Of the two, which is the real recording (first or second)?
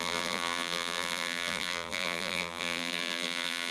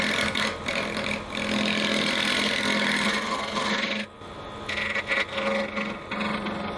second